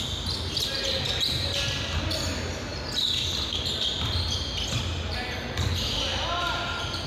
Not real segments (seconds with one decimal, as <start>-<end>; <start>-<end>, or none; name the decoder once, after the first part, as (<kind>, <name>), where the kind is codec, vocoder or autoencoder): none